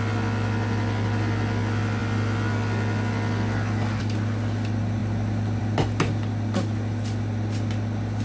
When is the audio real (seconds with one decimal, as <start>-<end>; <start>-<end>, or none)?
0.0-8.2